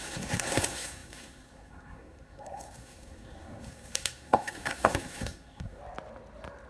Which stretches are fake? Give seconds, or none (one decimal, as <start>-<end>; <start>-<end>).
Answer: 0.0-5.8